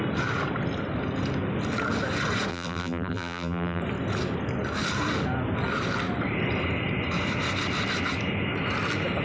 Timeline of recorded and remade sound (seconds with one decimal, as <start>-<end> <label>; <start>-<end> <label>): 0.0-2.5 recorded; 2.5-3.8 remade; 3.8-9.2 recorded